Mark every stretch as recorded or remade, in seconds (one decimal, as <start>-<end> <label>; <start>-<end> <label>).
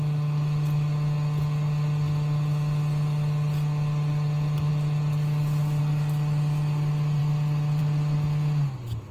0.0-9.1 recorded